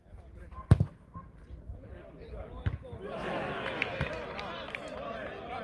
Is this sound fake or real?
real